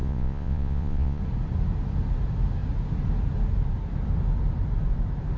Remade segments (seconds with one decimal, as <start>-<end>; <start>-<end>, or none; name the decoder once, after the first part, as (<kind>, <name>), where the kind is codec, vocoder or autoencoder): 0.0-1.2 (vocoder, Vocos)